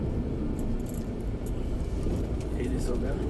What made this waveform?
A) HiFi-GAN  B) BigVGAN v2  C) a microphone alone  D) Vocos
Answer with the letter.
B